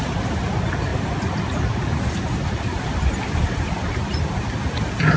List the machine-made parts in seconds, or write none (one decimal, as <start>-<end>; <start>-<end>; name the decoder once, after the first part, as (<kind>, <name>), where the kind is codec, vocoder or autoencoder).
none